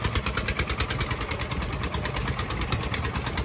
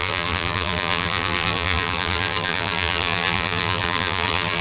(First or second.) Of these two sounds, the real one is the first